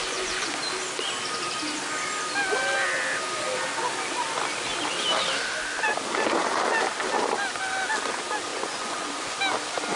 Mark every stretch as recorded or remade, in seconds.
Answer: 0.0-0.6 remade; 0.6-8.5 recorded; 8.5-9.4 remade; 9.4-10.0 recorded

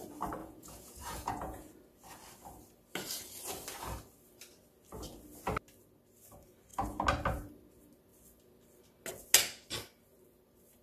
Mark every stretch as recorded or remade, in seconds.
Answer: 0.0-0.4 recorded; 0.4-1.7 remade; 1.7-10.8 recorded

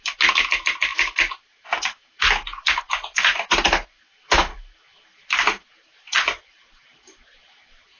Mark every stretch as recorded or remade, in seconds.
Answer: 0.0-8.0 recorded

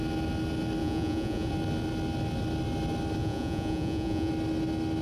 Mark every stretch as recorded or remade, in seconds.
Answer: 0.0-0.8 recorded; 0.8-1.5 remade; 1.5-3.2 recorded; 3.2-4.3 remade; 4.3-5.0 recorded

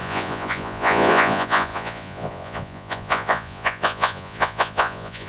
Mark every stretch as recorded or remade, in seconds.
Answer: 0.0-5.3 remade

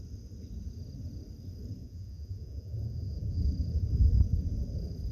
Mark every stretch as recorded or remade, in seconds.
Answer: 0.0-1.8 recorded; 1.8-3.4 remade; 3.4-5.1 recorded